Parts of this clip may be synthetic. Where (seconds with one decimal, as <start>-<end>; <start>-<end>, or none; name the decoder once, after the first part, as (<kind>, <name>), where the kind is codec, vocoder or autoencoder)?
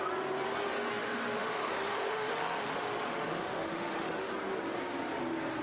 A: 0.9-4.3 (autoencoder, DAC-VAE)